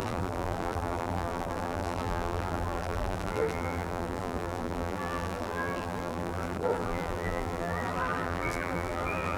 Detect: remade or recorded remade